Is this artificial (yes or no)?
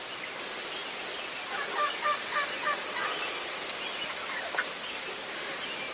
no